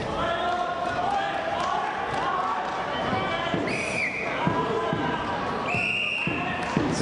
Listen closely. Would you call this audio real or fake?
real